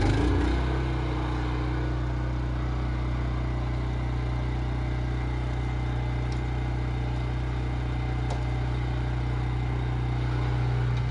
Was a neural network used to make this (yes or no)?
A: no